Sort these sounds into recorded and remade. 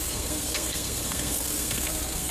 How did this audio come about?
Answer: remade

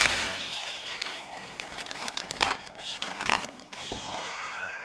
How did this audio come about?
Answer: remade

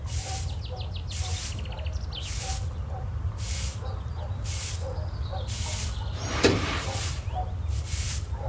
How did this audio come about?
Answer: recorded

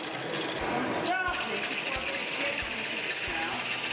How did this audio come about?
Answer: recorded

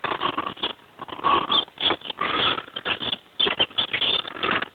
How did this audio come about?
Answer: recorded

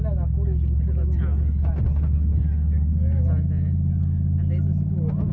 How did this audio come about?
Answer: recorded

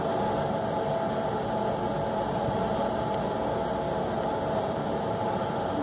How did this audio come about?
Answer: recorded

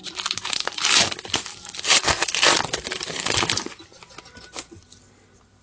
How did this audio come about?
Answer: recorded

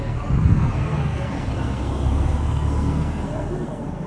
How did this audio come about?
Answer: remade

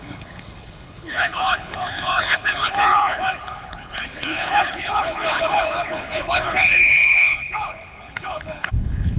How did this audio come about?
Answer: remade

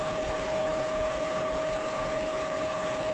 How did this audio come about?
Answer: remade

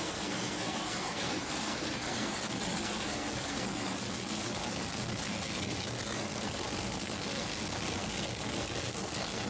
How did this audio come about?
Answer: remade